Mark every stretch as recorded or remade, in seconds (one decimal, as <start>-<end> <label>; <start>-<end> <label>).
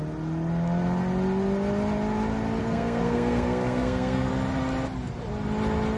0.0-2.6 recorded; 2.6-4.3 remade; 4.3-6.0 recorded